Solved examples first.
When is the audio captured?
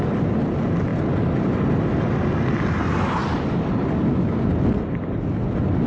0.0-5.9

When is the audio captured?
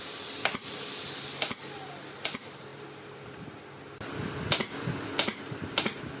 0.0-6.2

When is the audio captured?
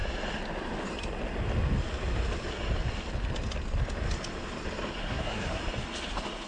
0.0-5.0; 5.6-6.5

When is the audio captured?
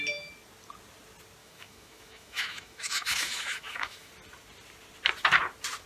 0.0-1.4; 4.1-5.9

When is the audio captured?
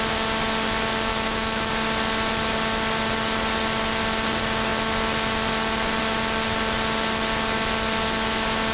0.0-1.1; 1.7-8.7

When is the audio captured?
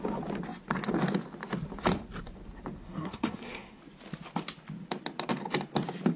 0.0-2.8; 3.8-6.2